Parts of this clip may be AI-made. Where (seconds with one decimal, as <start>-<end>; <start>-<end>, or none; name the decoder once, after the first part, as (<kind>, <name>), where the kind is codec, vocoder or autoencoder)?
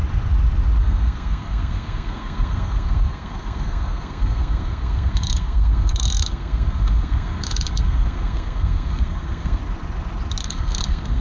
0.8-9.6 (codec, SNAC); 10.4-11.2